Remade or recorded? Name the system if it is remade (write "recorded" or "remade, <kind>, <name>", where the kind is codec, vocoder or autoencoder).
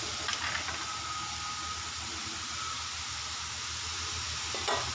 recorded